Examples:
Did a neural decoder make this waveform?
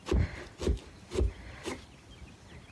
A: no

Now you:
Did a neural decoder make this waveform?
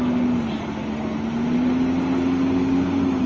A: no